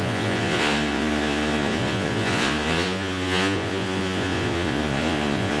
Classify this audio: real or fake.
fake